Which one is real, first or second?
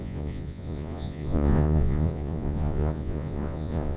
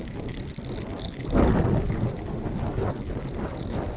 second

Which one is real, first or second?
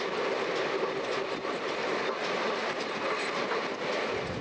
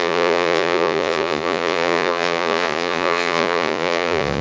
first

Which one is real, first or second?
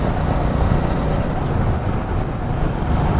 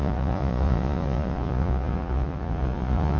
first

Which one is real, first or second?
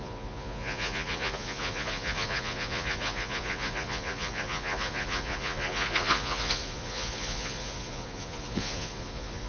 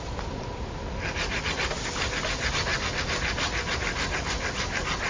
second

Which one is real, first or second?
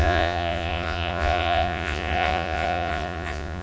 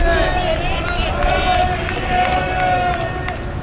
second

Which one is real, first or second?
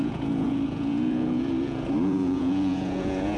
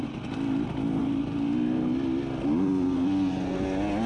second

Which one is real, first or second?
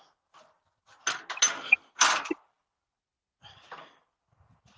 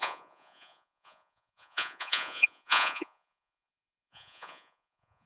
first